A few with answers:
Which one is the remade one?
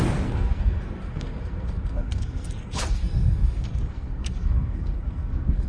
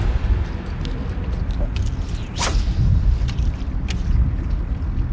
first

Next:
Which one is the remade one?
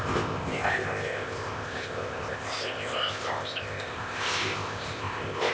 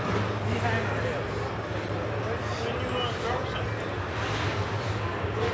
first